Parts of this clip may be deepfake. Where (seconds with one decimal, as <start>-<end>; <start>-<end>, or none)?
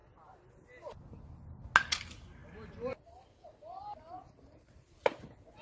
none